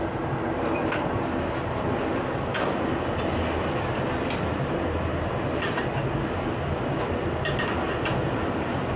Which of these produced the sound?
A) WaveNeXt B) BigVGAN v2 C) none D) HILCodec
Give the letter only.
C